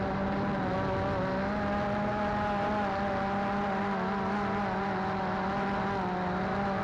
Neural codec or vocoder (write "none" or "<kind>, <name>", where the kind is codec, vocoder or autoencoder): none